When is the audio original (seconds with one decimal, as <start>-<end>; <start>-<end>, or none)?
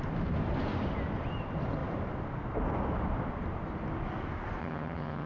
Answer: 0.0-4.6